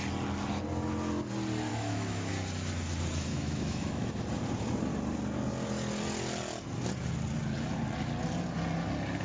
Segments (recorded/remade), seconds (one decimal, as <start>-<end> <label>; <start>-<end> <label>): 0.0-1.7 recorded; 1.7-2.3 remade; 2.3-3.3 recorded; 3.3-4.1 remade; 4.1-9.2 recorded